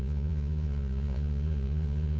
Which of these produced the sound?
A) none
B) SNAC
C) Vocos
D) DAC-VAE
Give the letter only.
C